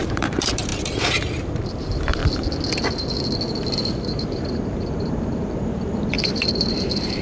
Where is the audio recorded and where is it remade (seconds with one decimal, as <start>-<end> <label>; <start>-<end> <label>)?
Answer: 0.0-2.2 remade; 2.2-4.0 recorded; 4.0-7.2 remade